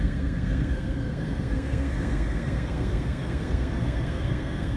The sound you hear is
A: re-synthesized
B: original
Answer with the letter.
A